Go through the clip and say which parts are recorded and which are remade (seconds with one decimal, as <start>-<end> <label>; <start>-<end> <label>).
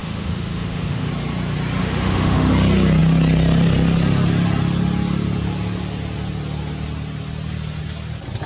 0.0-1.1 remade; 1.1-1.8 recorded; 1.8-2.5 remade; 2.5-8.5 recorded